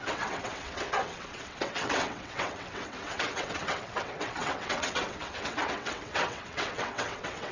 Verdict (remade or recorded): remade